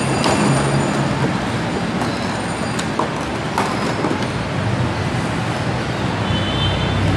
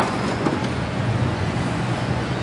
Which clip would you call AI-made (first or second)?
second